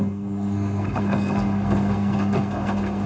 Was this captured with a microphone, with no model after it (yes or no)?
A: no